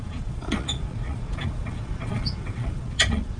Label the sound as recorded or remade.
remade